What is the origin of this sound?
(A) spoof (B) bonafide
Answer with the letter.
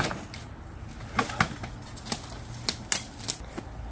B